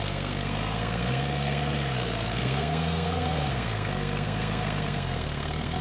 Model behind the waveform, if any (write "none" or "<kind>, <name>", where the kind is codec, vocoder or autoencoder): codec, SNAC